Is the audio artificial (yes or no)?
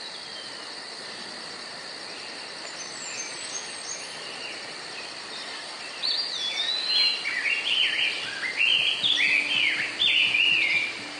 no